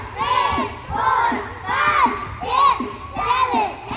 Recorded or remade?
recorded